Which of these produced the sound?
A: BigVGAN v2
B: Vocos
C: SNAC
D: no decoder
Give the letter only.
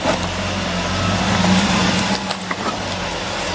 D